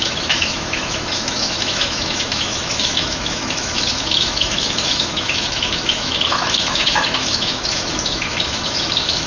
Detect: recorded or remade remade